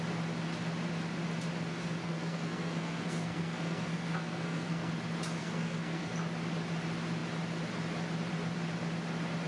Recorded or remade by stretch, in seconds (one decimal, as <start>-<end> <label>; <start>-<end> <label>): 0.0-2.0 recorded; 2.0-4.9 remade; 4.9-5.4 recorded; 5.4-6.1 remade; 6.1-9.5 recorded